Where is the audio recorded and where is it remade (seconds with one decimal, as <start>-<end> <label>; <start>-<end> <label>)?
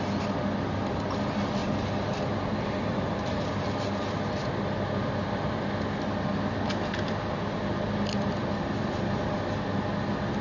0.0-1.6 recorded; 1.6-3.5 remade; 3.5-10.4 recorded